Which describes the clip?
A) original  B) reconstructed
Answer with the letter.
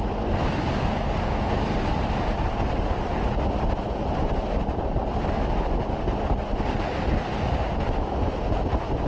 A